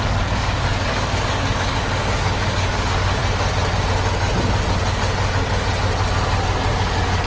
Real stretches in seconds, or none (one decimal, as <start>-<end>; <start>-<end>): 3.2-6.7